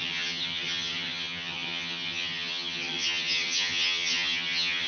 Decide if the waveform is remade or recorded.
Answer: remade